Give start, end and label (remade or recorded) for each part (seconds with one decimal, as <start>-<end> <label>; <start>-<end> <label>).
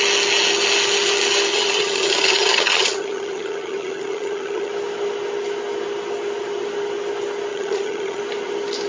0.0-1.5 recorded; 1.5-4.7 remade; 4.7-7.5 recorded; 7.5-8.2 remade; 8.2-8.9 recorded